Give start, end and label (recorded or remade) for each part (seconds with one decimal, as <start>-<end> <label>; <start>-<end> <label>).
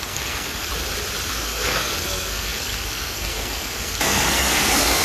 0.0-0.7 remade; 0.7-1.3 recorded; 1.3-5.0 remade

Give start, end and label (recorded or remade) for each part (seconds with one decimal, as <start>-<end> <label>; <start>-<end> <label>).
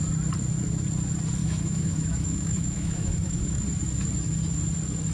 0.0-1.4 recorded; 1.4-3.6 remade; 3.6-5.1 recorded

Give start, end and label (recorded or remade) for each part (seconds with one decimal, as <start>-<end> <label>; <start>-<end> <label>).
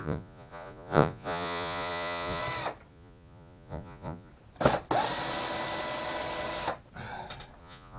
0.0-2.4 remade; 2.4-2.9 recorded; 2.9-4.3 remade; 4.3-7.6 recorded; 7.6-8.0 remade